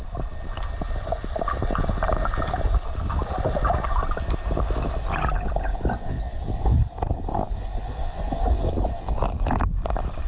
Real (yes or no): yes